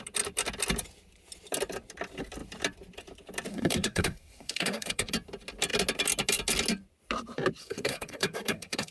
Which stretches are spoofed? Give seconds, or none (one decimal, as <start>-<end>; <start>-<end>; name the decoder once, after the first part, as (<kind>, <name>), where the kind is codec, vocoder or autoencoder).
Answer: 3.5-5.1 (codec, SNAC); 7.6-8.9